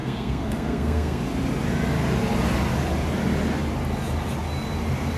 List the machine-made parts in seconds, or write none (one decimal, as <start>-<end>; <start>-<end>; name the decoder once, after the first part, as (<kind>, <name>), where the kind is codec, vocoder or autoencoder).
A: 0.0-1.2 (codec, SNAC)